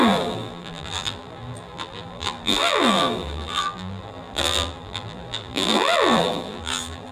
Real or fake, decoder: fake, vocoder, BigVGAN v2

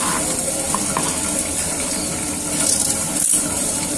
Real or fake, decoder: real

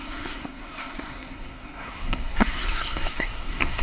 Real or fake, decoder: fake, codec, SNAC